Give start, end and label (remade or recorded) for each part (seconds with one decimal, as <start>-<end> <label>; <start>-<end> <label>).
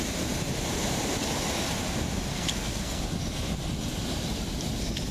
0.0-2.3 recorded; 2.3-3.0 remade; 3.0-5.1 recorded